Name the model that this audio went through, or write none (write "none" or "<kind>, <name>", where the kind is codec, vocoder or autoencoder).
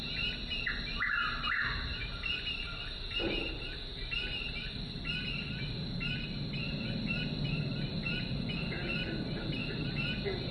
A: none